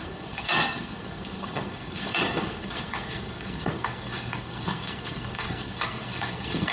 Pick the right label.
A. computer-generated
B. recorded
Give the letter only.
A